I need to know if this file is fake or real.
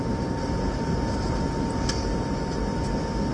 real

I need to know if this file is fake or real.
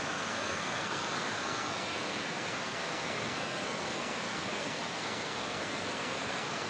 fake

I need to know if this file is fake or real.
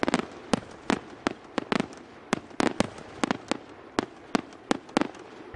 real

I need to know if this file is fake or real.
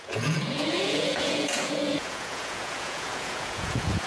fake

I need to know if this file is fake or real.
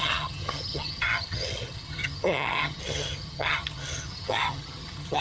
fake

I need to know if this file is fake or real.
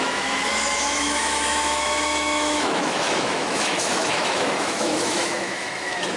fake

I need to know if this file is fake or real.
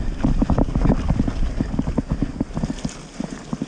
real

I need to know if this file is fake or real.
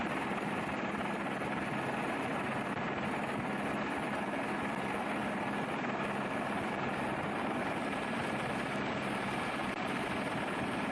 real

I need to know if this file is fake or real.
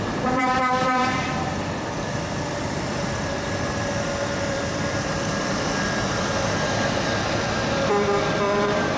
fake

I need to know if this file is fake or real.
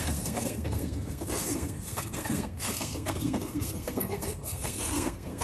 fake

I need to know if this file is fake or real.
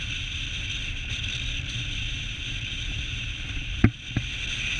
real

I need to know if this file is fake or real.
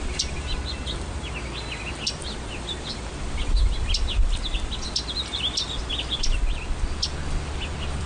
fake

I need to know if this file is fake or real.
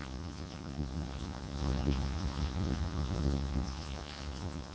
fake